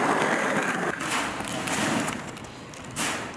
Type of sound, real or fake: real